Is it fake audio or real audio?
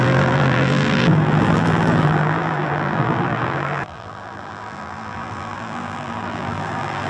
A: fake